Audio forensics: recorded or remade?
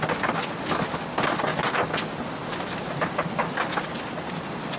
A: recorded